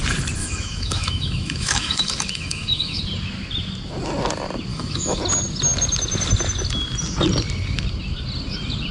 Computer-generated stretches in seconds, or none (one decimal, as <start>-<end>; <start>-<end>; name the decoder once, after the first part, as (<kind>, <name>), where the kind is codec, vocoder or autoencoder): 0.4-3.0 (autoencoder, DAC-VAE); 4.7-5.2